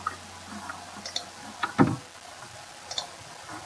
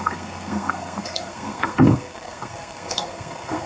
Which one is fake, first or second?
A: second